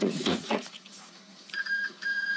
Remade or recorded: remade